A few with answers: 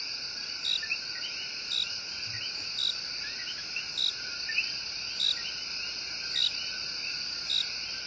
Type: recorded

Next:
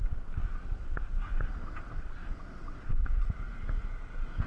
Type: recorded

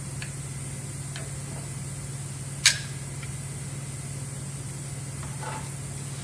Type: recorded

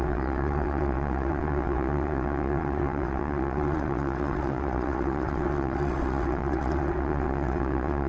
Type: remade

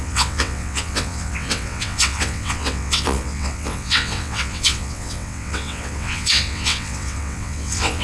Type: remade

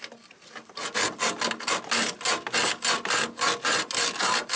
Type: recorded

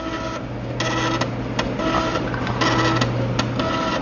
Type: recorded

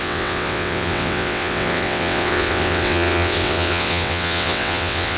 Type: remade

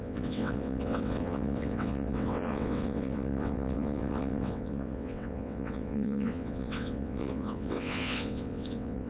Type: remade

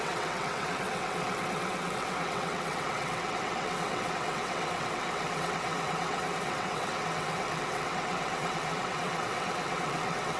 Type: remade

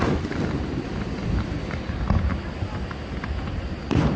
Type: recorded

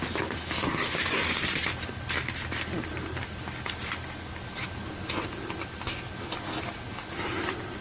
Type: recorded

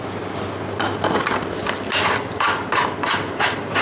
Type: recorded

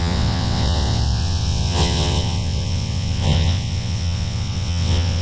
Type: remade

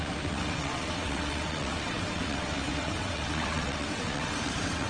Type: remade